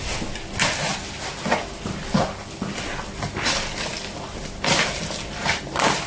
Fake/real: real